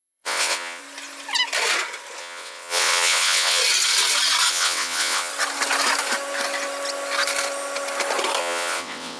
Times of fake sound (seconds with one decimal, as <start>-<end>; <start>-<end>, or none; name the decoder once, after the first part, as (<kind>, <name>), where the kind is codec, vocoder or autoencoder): 0.0-0.8 (vocoder, WaveNeXt); 2.2-3.6; 4.5-5.3; 8.4-9.2